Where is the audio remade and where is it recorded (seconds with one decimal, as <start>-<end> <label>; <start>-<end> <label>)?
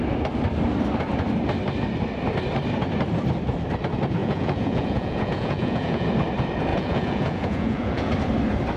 0.0-4.2 recorded; 4.2-6.1 remade; 6.1-6.7 recorded; 6.7-8.1 remade; 8.1-8.8 recorded